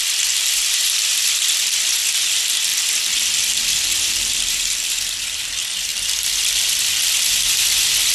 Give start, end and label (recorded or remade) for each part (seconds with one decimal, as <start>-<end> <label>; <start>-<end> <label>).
0.0-2.7 remade; 2.7-3.2 recorded; 3.2-8.1 remade